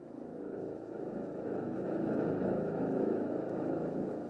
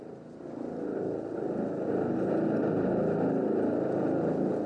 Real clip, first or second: second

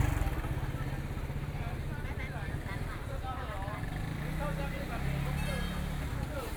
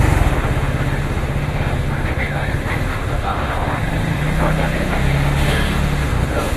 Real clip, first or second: first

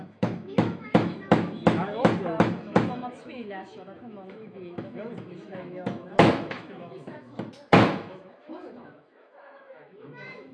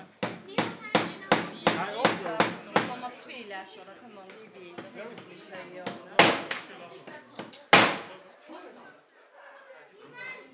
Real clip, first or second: second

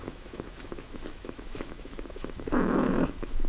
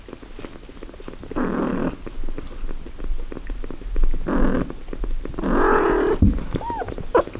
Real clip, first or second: second